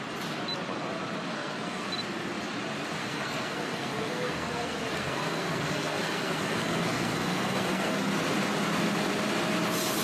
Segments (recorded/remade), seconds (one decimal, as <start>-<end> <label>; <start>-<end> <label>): 0.0-1.3 recorded; 1.3-1.9 remade; 1.9-3.0 recorded; 3.0-8.1 remade; 8.1-10.0 recorded